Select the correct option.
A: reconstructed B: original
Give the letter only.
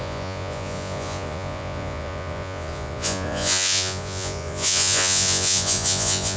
A